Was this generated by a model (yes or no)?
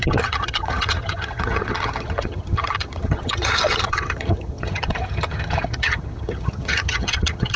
yes